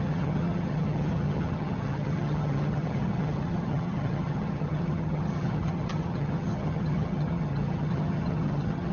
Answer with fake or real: fake